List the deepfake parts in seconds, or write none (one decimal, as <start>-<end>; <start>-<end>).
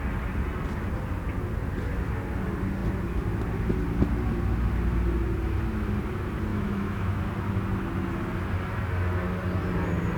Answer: 6.5-7.2